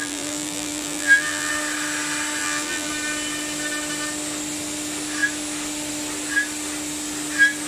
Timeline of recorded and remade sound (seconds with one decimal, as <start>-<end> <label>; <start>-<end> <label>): 0.0-1.5 remade; 1.5-2.4 recorded; 2.4-2.9 remade; 2.9-7.7 recorded